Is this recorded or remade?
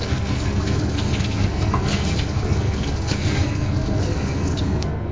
remade